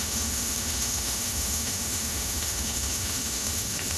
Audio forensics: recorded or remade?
remade